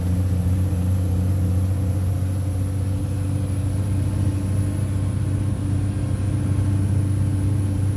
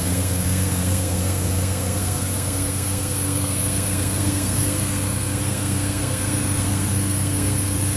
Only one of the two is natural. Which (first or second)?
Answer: first